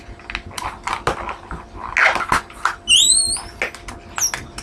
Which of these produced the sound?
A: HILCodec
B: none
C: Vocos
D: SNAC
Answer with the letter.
B